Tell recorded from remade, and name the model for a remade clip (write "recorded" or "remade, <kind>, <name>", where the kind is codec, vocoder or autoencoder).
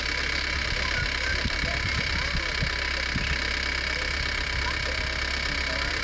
recorded